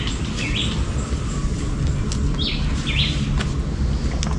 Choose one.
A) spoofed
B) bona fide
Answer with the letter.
B